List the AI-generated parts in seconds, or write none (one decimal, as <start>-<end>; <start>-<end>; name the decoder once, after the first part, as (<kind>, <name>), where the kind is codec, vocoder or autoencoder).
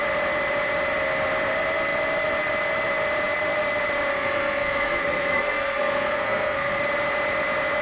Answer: 4.1-6.8 (codec, SNAC)